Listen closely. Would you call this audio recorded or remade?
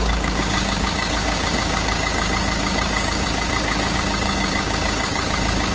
remade